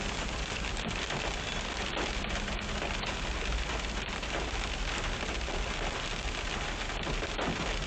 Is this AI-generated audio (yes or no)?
no